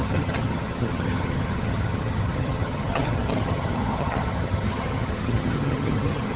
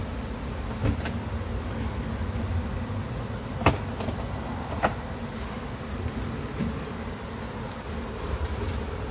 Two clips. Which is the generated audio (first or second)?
first